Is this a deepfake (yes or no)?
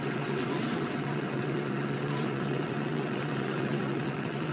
yes